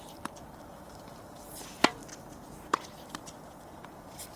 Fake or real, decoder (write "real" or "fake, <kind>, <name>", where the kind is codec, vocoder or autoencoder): fake, vocoder, BigVGAN v2